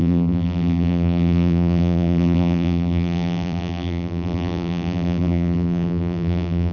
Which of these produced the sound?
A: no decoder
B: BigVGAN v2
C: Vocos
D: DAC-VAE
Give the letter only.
B